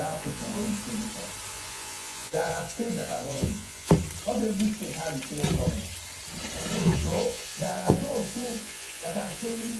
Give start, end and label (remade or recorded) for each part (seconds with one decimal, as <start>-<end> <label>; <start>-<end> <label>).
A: 0.0-0.8 remade; 0.8-1.5 recorded; 1.5-3.9 remade; 3.9-6.8 recorded; 6.8-9.8 remade